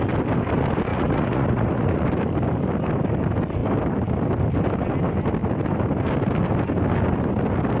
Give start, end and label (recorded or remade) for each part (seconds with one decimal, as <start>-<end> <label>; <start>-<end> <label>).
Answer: 0.0-0.9 recorded; 0.9-2.0 remade; 2.0-7.8 recorded